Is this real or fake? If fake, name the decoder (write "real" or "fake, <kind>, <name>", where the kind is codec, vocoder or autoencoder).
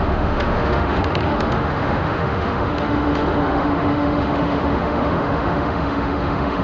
fake, autoencoder, DAC-VAE